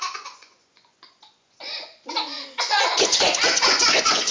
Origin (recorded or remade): remade